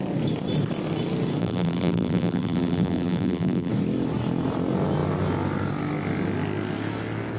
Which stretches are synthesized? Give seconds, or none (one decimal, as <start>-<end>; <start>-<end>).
1.4-3.7